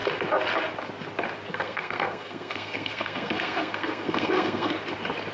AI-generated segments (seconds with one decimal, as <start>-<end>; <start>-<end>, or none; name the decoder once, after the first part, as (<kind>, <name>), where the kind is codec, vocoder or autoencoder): 1.5-4.7 (codec, SNAC)